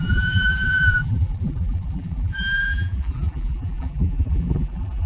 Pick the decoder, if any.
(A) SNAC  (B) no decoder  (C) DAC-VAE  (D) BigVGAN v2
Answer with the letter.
D